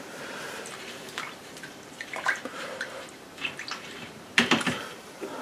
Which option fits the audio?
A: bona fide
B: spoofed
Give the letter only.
B